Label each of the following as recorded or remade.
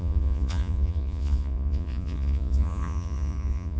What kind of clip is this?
remade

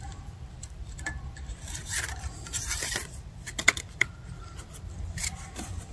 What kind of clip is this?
remade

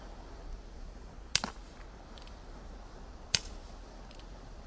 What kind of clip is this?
recorded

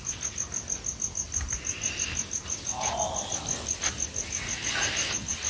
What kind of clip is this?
recorded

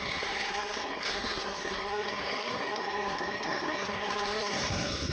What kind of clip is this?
remade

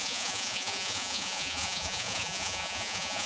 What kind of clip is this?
remade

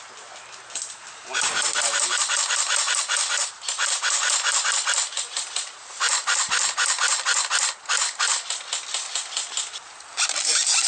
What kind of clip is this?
recorded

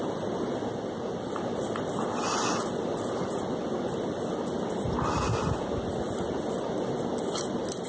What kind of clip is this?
recorded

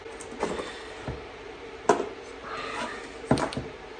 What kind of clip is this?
recorded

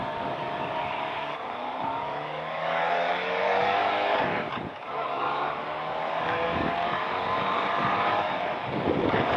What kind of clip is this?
remade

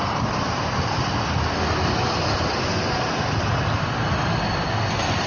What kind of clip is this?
recorded